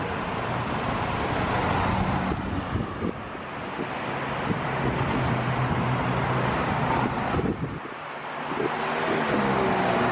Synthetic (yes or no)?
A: no